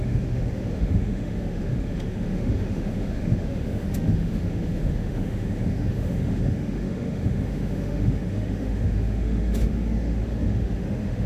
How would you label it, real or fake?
fake